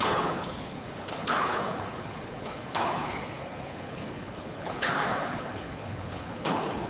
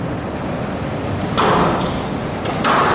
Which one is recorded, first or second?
second